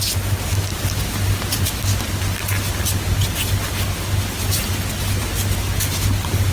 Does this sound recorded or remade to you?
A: recorded